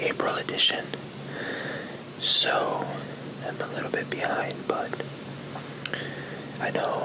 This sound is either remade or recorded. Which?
recorded